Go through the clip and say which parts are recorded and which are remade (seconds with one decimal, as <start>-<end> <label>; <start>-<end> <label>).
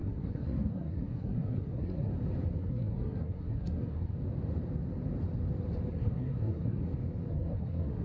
0.0-2.1 remade; 2.1-2.6 recorded; 2.6-4.1 remade; 4.1-5.9 recorded; 5.9-6.8 remade; 6.8-7.3 recorded; 7.3-8.0 remade